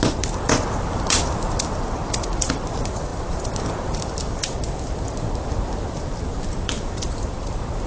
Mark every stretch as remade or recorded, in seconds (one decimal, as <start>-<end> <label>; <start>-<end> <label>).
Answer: 0.0-7.9 remade